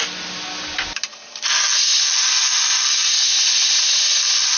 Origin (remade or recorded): recorded